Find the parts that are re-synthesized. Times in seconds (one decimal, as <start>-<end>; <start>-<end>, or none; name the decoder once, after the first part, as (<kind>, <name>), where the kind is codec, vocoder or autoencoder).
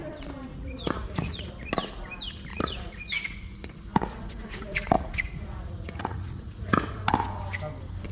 0.5-1.5 (vocoder, Vocos); 2.5-7.0